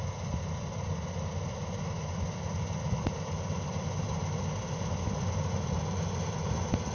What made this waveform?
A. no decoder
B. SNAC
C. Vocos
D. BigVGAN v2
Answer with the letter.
A